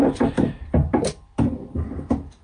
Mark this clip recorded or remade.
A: remade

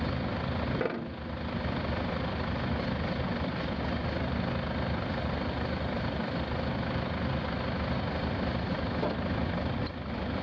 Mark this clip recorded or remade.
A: recorded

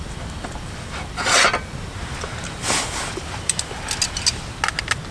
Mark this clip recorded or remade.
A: recorded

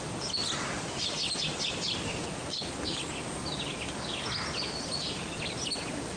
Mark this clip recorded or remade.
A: recorded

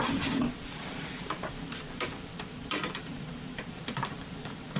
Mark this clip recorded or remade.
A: remade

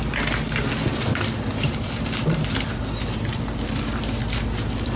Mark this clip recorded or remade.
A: recorded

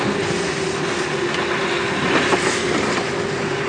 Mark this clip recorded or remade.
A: recorded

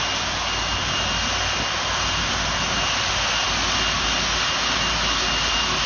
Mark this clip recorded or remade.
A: recorded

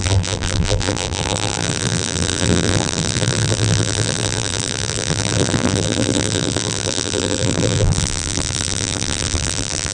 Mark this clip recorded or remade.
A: remade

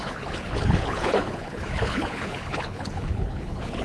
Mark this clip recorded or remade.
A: remade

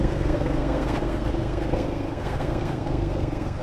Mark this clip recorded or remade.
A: remade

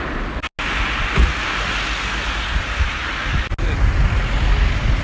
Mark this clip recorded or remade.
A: recorded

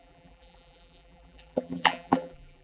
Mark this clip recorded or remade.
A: remade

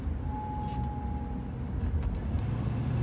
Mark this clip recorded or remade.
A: recorded